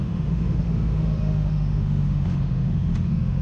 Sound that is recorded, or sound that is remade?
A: remade